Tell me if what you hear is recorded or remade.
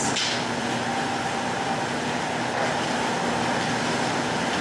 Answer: recorded